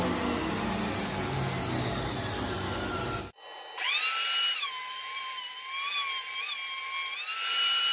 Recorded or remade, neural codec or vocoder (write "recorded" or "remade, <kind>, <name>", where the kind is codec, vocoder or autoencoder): recorded